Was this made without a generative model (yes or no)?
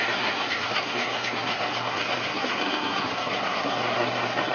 no